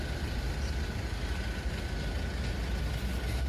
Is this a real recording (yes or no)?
yes